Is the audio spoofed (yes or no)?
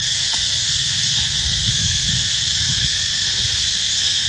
yes